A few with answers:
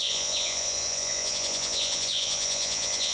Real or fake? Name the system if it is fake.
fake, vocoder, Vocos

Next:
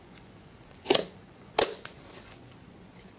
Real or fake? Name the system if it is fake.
fake, vocoder, Vocos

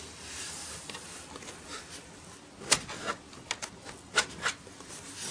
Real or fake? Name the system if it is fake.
real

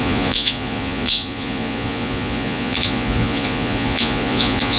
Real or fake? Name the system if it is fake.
fake, vocoder, Vocos